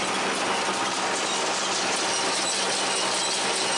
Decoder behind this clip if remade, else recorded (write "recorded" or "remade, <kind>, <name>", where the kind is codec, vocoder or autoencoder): recorded